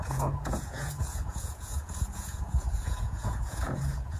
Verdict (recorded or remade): remade